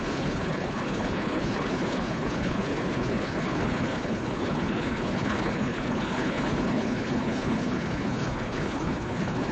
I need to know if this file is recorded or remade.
remade